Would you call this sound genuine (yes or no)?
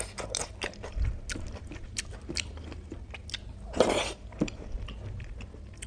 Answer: yes